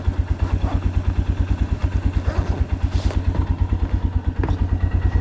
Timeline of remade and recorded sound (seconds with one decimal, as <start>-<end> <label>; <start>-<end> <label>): 0.0-5.2 recorded

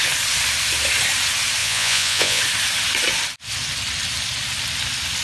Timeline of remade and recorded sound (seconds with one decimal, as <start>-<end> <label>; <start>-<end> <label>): 0.0-1.6 recorded; 1.6-2.4 remade; 2.4-5.2 recorded

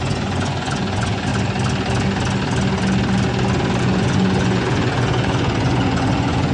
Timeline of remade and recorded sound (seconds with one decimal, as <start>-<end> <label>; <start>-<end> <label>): 0.0-1.3 remade; 1.3-3.8 recorded; 3.8-6.5 remade

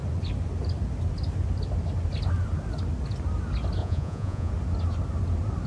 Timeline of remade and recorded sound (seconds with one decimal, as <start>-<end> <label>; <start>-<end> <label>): 0.0-3.8 recorded; 3.8-4.5 remade; 4.5-5.7 recorded